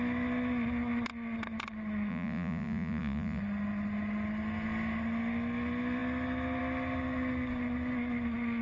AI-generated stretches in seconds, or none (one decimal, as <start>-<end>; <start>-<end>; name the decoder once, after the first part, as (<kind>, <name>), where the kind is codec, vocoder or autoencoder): 2.1-3.4 (vocoder, Vocos)